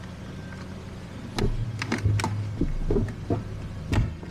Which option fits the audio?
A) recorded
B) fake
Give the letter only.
A